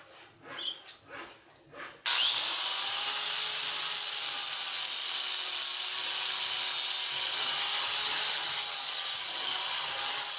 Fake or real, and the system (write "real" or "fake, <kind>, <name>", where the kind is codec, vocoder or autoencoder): real